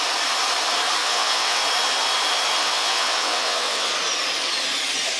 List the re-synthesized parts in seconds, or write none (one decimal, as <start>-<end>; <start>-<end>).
1.0-1.6; 2.6-3.9